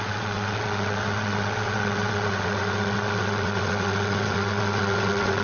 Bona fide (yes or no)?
no